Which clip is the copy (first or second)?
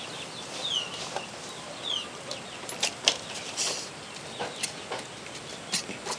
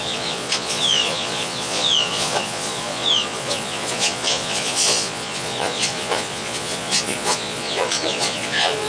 second